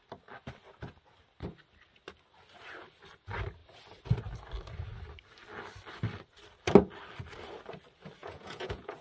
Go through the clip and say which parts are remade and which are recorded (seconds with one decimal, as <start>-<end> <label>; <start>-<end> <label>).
0.0-8.2 recorded; 8.2-9.0 remade